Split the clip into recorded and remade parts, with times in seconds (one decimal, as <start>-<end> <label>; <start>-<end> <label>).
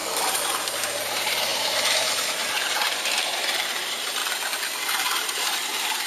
0.0-0.8 recorded; 0.8-4.2 remade; 4.2-5.0 recorded; 5.0-6.1 remade